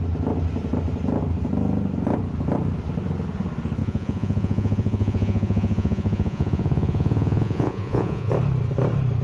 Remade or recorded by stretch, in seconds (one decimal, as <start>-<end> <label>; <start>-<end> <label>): 0.0-3.8 recorded; 3.8-8.3 remade; 8.3-9.2 recorded

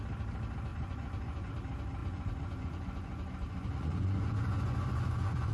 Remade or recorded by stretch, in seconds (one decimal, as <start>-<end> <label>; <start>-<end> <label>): 0.0-0.7 recorded; 0.7-1.5 remade; 1.5-2.0 recorded; 2.0-5.5 remade

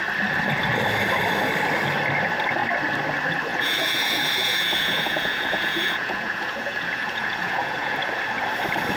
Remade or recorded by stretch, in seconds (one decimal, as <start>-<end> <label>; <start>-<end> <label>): 0.0-3.5 recorded; 3.5-8.2 remade; 8.2-9.0 recorded

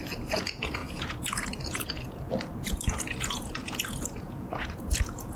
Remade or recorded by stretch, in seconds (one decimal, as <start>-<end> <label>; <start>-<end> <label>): 0.0-5.4 remade